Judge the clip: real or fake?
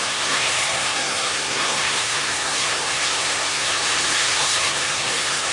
fake